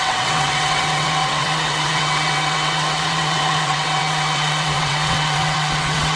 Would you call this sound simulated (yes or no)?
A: yes